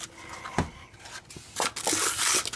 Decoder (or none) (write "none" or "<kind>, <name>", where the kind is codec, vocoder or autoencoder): none